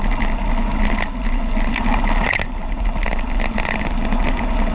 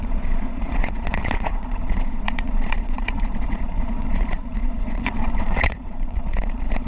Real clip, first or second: first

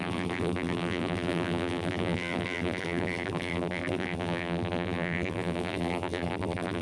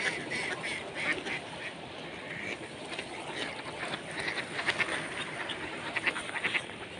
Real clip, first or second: second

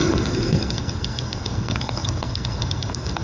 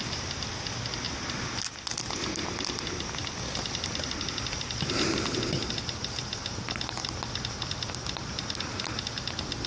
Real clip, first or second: second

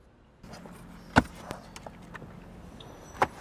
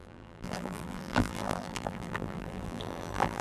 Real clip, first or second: first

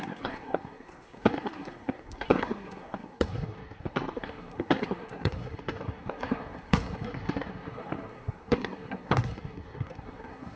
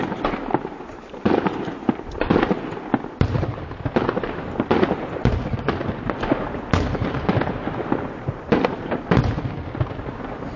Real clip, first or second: second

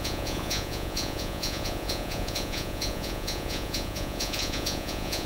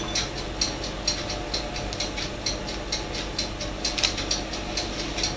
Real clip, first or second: second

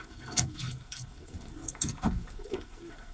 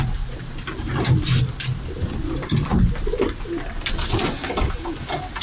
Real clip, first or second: second